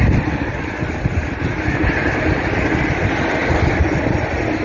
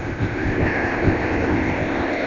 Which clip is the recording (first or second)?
first